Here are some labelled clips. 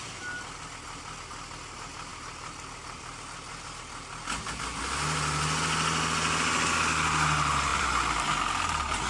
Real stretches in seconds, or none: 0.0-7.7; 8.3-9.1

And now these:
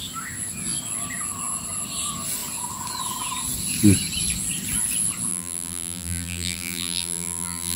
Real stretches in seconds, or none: 0.0-5.3

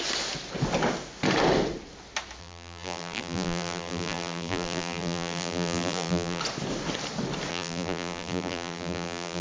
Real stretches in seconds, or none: 0.0-2.4; 6.4-7.5

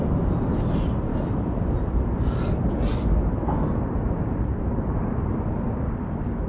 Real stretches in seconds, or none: 0.0-1.1; 2.1-4.0; 6.1-6.5

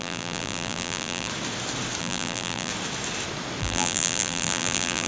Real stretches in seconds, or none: 1.3-2.0; 2.7-3.6

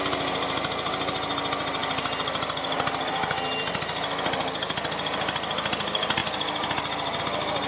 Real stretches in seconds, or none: 0.0-7.7

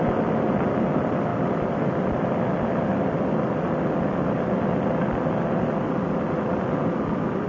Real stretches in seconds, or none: 0.0-7.5

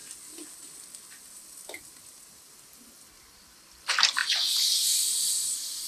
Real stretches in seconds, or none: 0.0-1.1; 4.2-5.3